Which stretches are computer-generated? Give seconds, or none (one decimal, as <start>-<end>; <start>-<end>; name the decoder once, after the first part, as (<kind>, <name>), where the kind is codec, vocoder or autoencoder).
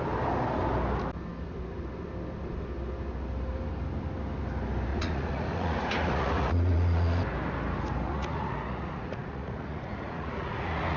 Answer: 4.9-7.2 (vocoder, Vocos); 8.1-11.0